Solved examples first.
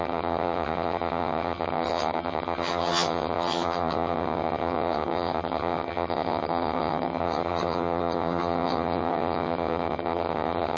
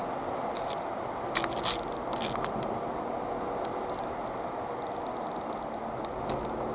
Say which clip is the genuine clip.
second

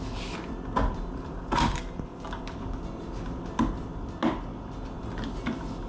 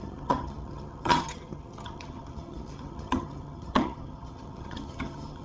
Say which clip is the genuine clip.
first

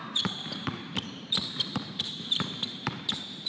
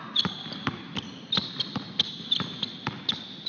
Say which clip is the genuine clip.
second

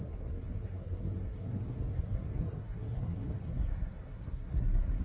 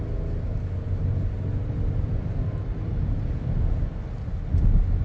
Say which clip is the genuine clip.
second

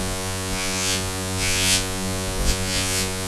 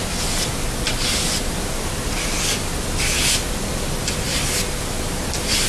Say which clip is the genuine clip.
second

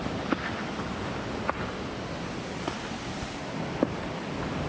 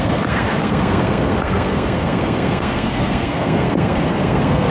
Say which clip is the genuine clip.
first